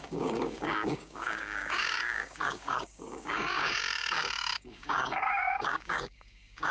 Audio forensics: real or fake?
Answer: fake